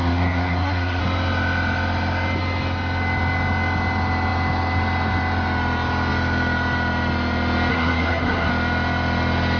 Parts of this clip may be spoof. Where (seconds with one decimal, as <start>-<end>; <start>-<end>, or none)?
0.0-1.0; 7.7-8.5